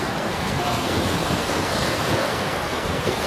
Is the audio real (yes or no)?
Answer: no